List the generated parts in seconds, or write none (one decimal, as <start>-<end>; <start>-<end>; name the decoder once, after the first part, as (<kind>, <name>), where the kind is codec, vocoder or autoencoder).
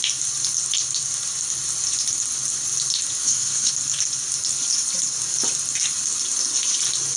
3.2-3.7 (codec, SNAC)